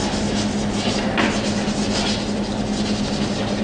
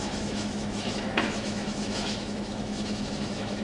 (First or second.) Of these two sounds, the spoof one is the second